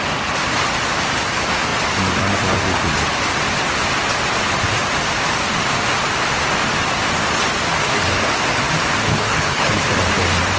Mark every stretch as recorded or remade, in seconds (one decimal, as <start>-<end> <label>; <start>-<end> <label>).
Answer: 0.0-9.1 recorded; 9.1-9.8 remade; 9.8-10.6 recorded